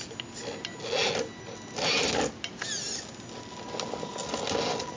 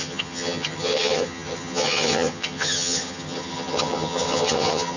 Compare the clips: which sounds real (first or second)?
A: first